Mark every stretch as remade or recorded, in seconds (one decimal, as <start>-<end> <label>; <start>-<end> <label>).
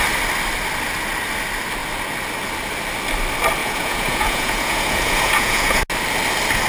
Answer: 0.0-3.6 recorded; 3.6-5.8 remade; 5.8-6.7 recorded